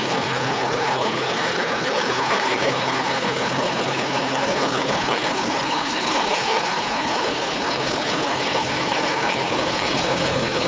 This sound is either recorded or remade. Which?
remade